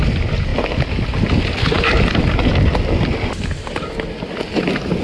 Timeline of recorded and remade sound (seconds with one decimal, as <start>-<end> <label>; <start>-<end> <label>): 0.0-5.0 recorded